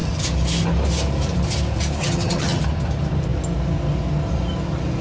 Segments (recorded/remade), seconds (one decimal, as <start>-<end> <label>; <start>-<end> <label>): 0.0-2.0 recorded; 2.0-2.6 remade; 2.6-5.0 recorded